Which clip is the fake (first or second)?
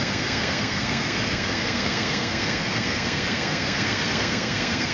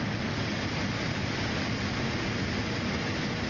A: first